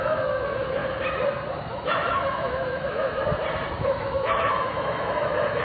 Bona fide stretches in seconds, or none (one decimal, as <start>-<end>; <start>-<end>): 0.8-1.7; 3.2-3.8